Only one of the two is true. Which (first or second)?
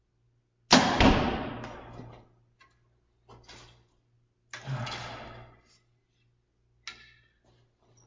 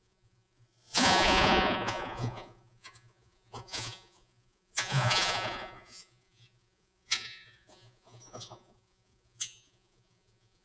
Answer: first